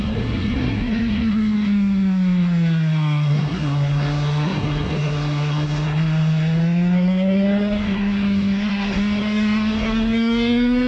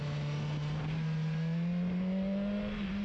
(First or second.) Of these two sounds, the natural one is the second